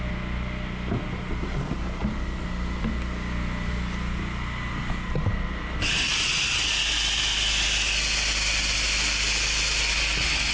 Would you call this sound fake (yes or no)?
no